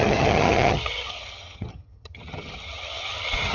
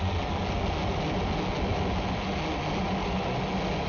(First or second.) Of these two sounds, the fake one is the first